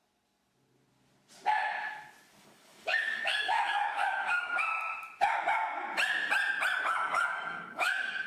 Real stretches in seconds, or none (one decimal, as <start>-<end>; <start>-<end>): 0.0-2.4; 4.7-6.8